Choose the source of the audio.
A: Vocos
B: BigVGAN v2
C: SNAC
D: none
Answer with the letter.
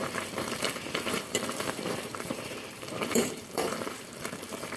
B